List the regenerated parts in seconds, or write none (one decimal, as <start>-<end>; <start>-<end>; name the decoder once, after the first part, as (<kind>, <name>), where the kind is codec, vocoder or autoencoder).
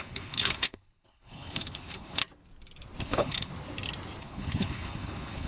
0.0-2.2 (codec, HILCodec); 3.0-3.5; 4.2-5.5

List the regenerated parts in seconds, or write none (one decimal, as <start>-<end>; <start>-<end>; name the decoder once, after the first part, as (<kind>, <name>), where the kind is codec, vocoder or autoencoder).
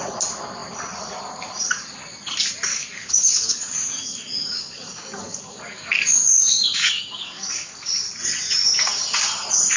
2.7-7.9 (codec, DAC)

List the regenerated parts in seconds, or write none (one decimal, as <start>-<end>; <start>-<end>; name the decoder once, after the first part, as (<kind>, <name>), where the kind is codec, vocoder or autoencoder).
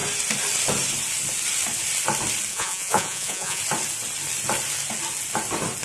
2.5-3.6 (vocoder, Vocos)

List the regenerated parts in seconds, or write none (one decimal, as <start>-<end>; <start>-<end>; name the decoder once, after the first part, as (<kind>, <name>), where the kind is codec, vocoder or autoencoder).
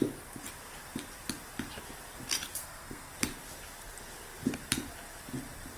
2.6-3.1 (codec, SNAC)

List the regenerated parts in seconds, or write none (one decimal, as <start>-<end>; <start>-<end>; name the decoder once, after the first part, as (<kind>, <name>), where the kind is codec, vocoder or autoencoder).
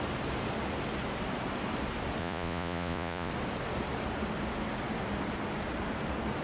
2.2-3.3 (vocoder, Vocos)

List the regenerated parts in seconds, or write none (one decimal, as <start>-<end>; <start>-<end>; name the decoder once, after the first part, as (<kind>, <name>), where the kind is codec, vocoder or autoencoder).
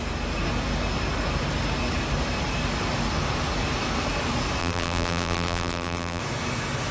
4.6-6.2 (vocoder, BigVGAN v2)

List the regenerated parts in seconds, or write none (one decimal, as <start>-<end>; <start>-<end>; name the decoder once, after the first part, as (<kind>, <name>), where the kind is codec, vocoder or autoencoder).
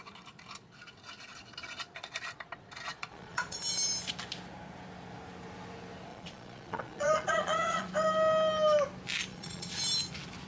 2.9-3.6 (vocoder, Vocos); 6.1-7.9; 9.3-9.8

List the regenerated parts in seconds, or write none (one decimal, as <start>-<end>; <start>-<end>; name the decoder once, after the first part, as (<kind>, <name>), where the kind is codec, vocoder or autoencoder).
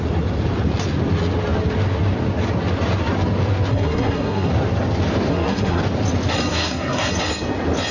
3.7-4.5 (codec, SNAC); 5.3-5.8; 6.5-7.1